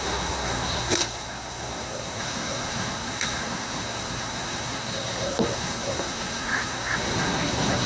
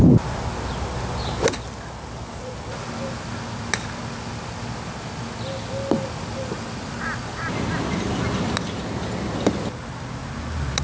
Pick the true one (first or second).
second